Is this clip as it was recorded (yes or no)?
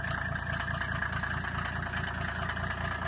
yes